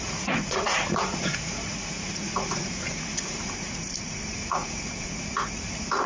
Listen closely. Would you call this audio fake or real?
fake